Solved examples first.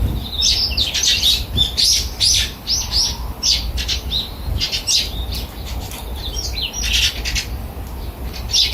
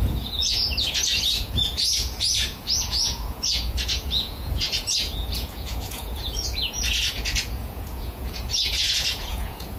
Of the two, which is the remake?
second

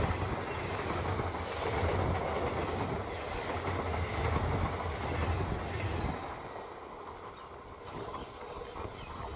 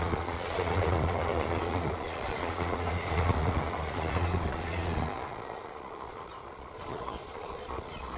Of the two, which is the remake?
second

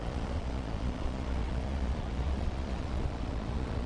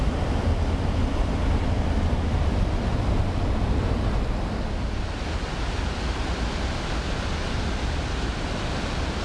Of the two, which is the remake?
first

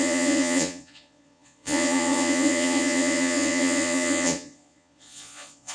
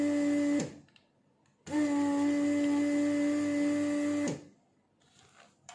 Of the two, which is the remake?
first